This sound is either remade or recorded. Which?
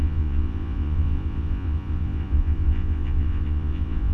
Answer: remade